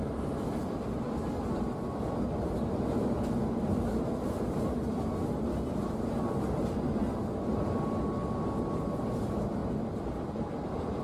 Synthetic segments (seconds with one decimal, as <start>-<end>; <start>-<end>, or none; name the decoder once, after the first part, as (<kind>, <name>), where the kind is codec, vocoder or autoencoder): none